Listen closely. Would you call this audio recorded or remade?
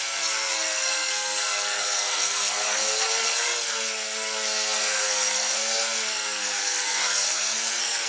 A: remade